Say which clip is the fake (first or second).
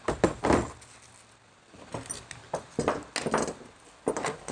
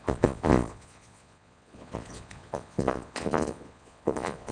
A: second